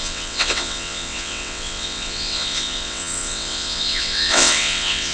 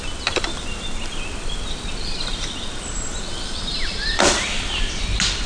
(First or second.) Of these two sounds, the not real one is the first